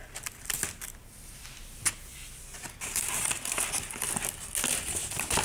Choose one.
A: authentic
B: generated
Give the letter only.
A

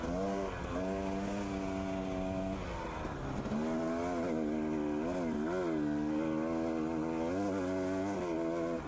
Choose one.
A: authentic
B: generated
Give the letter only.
A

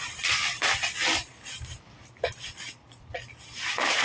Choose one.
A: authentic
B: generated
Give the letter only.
B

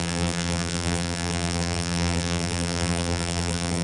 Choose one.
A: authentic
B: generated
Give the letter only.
B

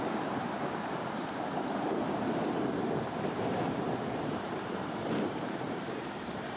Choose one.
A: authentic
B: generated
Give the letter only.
B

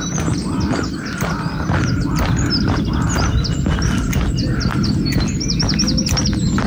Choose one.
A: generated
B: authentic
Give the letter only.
B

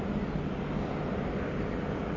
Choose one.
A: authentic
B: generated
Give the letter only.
A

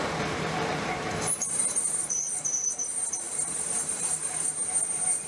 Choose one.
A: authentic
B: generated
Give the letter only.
B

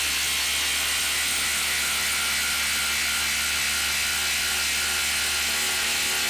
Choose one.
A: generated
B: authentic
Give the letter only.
B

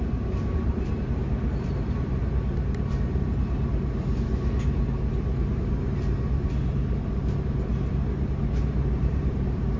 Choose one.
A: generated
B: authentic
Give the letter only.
A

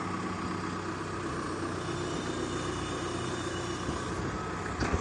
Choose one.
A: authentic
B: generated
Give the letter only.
A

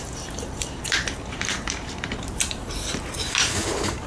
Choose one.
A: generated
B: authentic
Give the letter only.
A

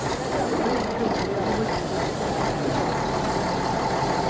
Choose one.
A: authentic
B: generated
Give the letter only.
A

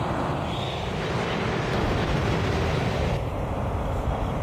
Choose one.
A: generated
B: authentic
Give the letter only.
B